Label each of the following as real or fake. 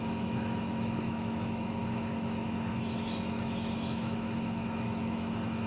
fake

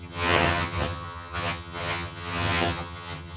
fake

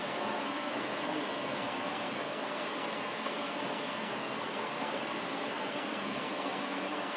fake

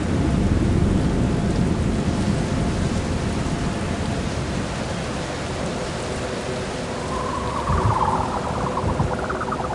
real